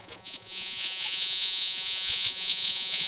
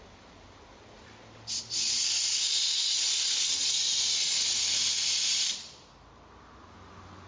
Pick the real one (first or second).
second